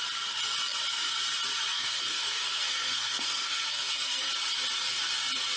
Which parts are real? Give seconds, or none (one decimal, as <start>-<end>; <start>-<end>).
0.0-1.7; 4.3-5.6